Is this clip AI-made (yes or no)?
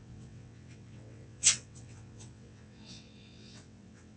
yes